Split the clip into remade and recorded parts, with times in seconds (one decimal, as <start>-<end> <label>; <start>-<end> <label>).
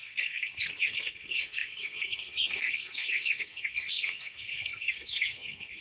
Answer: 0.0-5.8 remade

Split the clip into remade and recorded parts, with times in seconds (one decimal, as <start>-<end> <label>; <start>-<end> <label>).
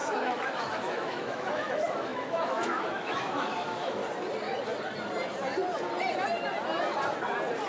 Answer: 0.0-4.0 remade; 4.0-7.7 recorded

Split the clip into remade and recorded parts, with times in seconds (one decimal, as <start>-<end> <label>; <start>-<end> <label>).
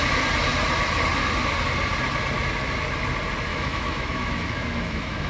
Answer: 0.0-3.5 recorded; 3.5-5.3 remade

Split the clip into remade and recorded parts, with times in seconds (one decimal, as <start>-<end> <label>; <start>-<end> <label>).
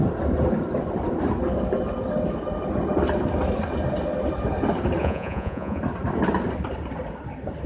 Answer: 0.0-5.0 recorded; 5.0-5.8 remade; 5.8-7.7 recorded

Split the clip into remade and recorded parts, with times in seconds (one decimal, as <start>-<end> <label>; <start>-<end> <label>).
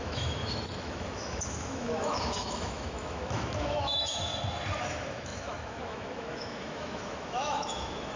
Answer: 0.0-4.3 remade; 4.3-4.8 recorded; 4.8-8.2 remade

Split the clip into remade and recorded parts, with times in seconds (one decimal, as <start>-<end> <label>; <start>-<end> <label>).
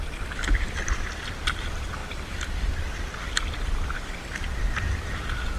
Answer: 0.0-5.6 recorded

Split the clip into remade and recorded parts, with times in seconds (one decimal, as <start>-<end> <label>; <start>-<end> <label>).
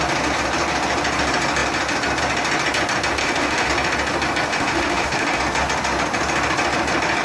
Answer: 0.0-3.2 recorded; 3.2-3.7 remade; 3.7-4.5 recorded; 4.5-5.4 remade; 5.4-7.2 recorded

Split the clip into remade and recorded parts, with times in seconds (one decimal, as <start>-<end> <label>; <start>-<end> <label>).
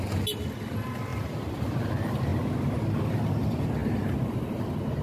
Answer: 0.0-3.8 recorded; 3.8-5.0 remade